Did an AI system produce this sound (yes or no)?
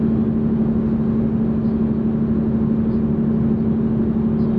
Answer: no